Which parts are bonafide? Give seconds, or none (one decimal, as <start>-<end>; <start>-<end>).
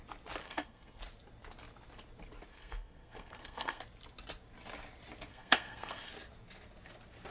0.0-0.4; 1.0-2.5; 3.8-5.3; 6.1-7.3